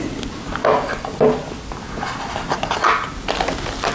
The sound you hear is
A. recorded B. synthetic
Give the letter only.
A